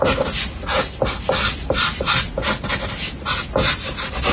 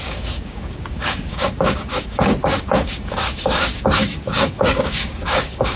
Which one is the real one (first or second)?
first